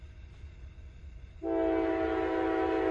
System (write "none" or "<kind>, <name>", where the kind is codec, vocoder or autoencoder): none